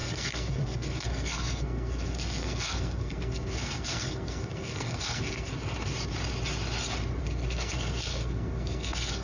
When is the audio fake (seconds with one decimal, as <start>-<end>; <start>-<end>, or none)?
0.0-5.5; 7.2-9.2